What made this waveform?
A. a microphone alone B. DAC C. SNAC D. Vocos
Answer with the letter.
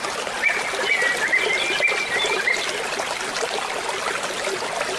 A